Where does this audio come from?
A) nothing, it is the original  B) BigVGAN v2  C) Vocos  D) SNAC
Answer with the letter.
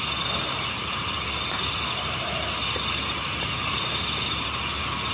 B